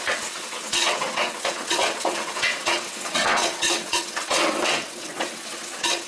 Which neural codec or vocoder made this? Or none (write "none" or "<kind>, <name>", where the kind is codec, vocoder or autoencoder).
vocoder, WaveNeXt